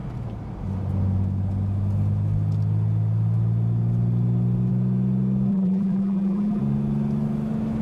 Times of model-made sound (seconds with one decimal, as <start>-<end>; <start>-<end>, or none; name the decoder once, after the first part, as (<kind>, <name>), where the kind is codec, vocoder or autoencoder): 5.5-6.6 (vocoder, BigVGAN v2)